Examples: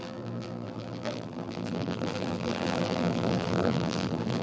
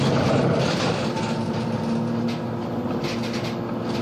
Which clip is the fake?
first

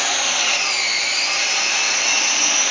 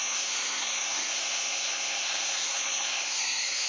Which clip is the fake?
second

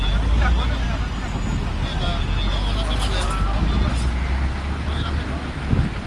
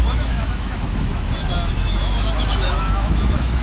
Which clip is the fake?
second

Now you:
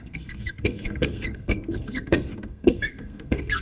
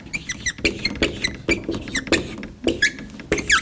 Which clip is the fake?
first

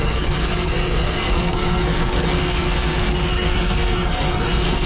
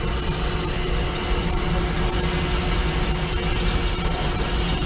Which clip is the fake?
first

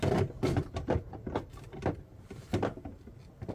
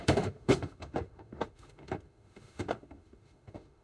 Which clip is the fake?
second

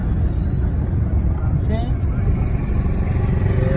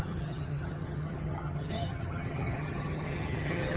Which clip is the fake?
second